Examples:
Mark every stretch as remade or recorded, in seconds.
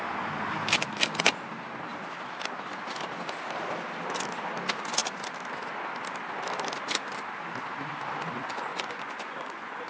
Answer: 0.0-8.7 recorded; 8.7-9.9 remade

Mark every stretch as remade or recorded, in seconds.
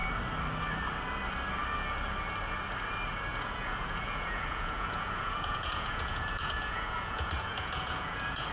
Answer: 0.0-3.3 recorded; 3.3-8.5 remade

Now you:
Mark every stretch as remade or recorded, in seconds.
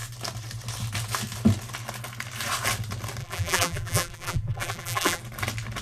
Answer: 0.0-3.2 recorded; 3.2-5.2 remade; 5.2-5.8 recorded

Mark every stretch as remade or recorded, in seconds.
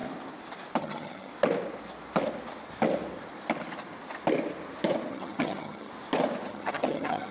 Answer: 0.0-0.8 recorded; 0.8-1.3 remade; 1.3-5.1 recorded; 5.1-5.9 remade; 5.9-6.5 recorded; 6.5-7.3 remade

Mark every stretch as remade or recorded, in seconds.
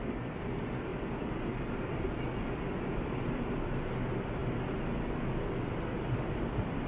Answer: 0.0-0.9 recorded; 0.9-3.8 remade; 3.8-5.9 recorded; 5.9-6.9 remade